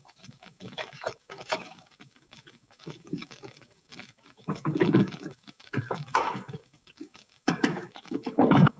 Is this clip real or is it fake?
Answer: fake